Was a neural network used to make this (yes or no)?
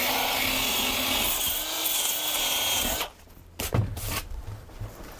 no